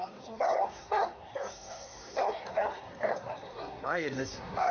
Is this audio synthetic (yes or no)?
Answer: yes